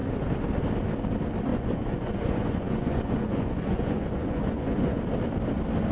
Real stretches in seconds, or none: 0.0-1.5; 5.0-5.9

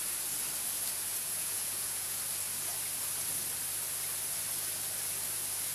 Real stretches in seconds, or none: 0.0-1.1; 2.2-5.7

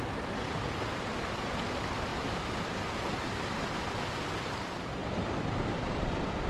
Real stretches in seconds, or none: 0.0-6.5

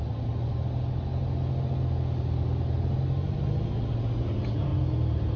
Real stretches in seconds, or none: 0.0-5.4

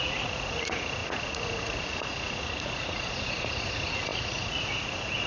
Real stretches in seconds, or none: none

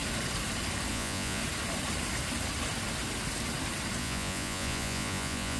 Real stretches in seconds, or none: 0.0-0.9; 1.4-4.0

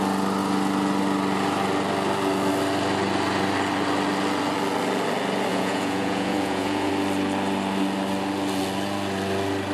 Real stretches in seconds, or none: 0.0-5.5; 6.9-9.7